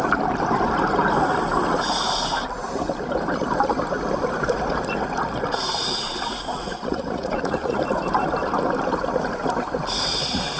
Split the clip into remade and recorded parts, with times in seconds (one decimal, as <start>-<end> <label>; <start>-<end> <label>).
0.0-5.8 recorded; 5.8-7.8 remade; 7.8-10.6 recorded